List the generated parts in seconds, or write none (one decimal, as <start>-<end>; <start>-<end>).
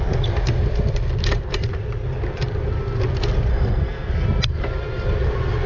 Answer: 3.5-4.1